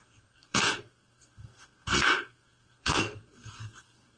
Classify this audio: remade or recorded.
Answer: remade